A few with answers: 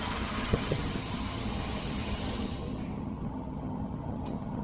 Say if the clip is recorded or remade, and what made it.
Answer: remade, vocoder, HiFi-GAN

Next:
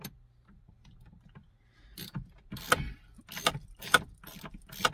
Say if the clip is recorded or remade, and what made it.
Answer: remade, vocoder, BigVGAN v2